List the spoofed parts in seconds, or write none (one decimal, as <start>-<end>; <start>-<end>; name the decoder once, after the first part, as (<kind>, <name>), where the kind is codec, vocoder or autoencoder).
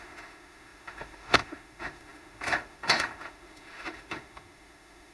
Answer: 0.0-5.1 (autoencoder, DAC-VAE)